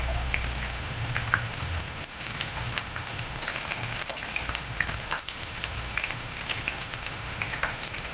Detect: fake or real fake